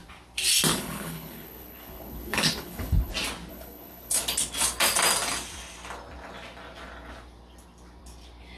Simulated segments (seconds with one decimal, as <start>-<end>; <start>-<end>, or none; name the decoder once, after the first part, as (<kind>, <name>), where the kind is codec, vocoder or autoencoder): 0.7-3.1 (codec, HILCodec); 3.5-4.2